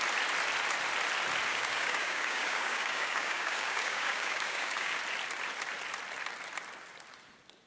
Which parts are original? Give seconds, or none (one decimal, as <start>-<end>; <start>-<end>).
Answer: 0.0-1.5; 5.0-7.7